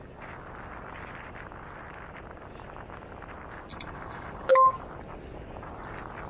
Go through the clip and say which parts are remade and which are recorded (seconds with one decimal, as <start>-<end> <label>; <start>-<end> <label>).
0.0-3.7 recorded; 3.7-4.5 remade; 4.5-6.3 recorded